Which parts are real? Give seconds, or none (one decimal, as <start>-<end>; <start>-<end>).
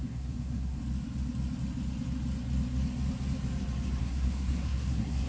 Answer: 0.8-4.0